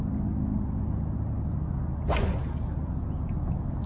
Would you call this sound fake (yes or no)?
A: no